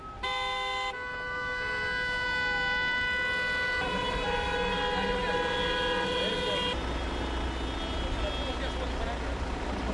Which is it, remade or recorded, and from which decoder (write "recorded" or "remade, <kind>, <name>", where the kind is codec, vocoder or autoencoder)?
recorded